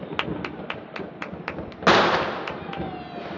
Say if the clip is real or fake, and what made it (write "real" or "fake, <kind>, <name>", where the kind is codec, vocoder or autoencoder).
real